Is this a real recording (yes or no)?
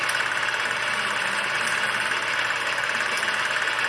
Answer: yes